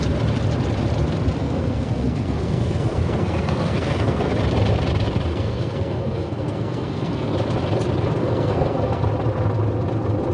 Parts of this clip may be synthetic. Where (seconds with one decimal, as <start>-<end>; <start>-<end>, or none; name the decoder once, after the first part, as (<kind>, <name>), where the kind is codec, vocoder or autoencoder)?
1.4-4.3 (codec, SNAC); 5.3-7.3; 8.2-9.0